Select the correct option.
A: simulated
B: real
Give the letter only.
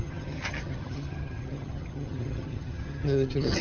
A